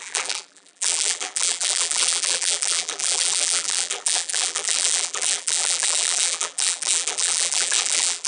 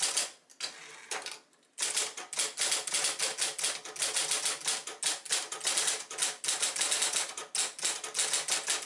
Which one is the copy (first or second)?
first